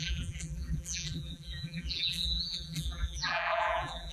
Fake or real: fake